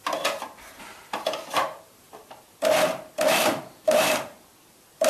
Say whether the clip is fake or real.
fake